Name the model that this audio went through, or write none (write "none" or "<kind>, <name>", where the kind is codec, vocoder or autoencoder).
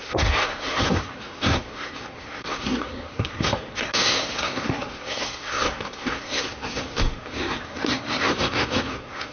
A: codec, SNAC